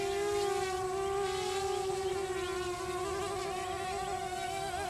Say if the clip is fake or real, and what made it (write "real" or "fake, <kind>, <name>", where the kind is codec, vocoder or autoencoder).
real